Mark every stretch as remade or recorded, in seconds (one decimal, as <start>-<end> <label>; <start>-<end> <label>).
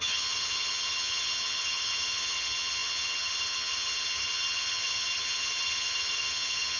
0.0-6.8 remade